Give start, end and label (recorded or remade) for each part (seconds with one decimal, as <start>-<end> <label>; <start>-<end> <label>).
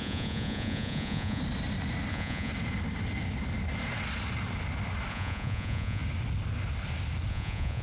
0.0-1.4 remade; 1.4-2.1 recorded; 2.1-2.5 remade; 2.5-5.1 recorded; 5.1-6.0 remade; 6.0-7.3 recorded; 7.3-7.8 remade